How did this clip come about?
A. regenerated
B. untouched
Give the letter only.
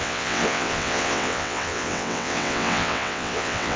A